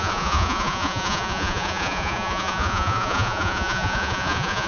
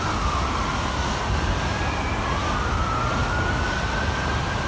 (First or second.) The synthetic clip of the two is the first